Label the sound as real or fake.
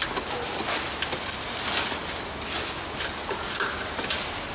real